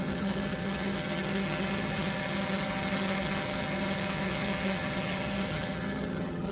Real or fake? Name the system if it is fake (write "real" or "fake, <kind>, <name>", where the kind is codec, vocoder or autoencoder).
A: fake, vocoder, HiFi-GAN